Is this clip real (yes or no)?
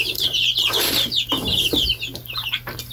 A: no